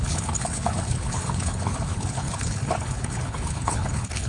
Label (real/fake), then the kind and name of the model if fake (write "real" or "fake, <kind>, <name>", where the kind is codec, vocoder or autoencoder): fake, codec, HILCodec